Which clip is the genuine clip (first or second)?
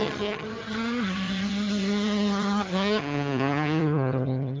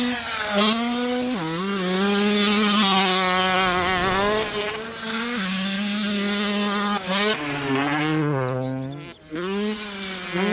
second